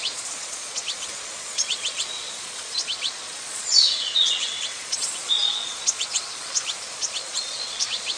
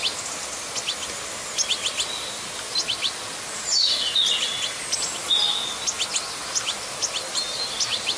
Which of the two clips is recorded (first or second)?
second